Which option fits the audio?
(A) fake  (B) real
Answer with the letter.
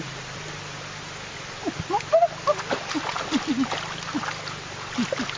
B